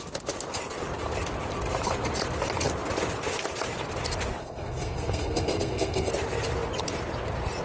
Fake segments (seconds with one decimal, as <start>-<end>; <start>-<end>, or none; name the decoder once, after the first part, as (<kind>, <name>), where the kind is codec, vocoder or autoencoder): 4.4-6.1 (codec, SNAC)